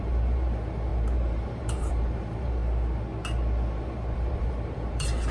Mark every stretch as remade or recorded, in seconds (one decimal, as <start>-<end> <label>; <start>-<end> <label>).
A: 0.0-2.6 remade; 2.6-3.7 recorded; 3.7-5.3 remade